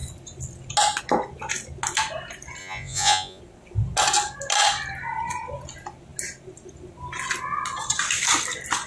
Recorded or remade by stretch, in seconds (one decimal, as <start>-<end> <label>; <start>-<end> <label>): 0.0-2.6 recorded; 2.6-3.4 remade; 3.4-8.9 recorded